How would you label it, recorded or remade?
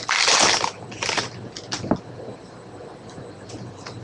recorded